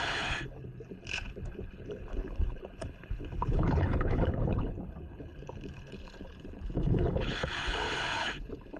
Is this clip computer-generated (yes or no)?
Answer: yes